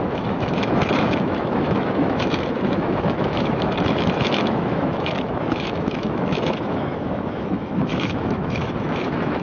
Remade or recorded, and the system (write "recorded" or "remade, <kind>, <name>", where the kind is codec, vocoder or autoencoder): remade, autoencoder, DAC-VAE